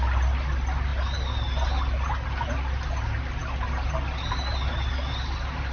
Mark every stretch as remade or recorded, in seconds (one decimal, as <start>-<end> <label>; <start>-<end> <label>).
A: 0.0-5.7 recorded

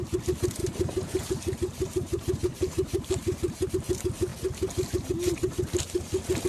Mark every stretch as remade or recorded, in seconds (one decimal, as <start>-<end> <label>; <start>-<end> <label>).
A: 0.0-0.6 recorded; 0.6-3.7 remade; 3.7-6.5 recorded